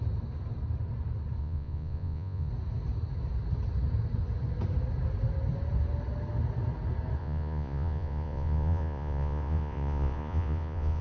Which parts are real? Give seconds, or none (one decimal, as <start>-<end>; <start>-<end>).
0.0-1.4; 2.5-7.2